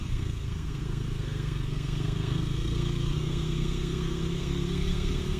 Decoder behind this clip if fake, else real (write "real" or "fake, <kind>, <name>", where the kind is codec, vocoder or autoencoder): fake, codec, SNAC